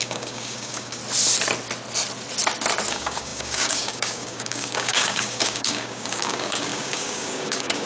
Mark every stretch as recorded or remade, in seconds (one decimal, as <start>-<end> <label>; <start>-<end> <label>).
0.0-1.0 remade; 1.0-2.9 recorded; 2.9-7.9 remade